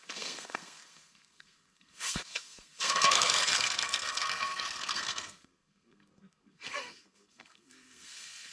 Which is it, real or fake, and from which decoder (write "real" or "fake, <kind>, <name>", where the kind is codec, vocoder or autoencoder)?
fake, codec, SNAC